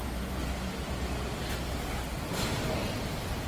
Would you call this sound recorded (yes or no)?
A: yes